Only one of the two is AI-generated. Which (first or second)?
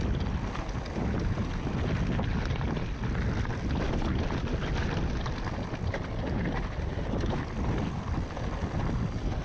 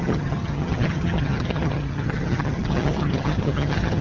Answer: second